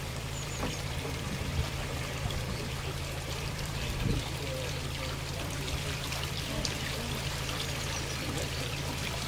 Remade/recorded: remade